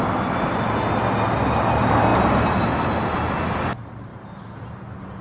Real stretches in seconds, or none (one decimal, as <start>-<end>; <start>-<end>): 0.0-5.2